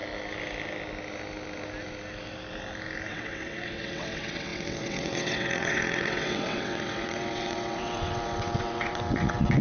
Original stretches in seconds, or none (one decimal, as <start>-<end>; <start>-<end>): 0.0-3.1